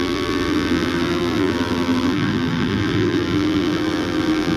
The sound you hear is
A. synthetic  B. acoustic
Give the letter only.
A